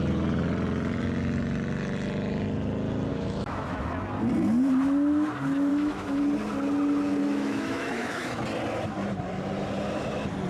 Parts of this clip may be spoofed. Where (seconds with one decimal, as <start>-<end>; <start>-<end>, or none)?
3.1-3.8; 5.7-6.2; 7.2-8.4